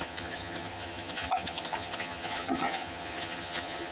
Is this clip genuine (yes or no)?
no